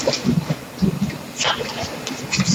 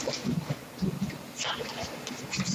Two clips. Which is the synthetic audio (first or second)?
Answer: first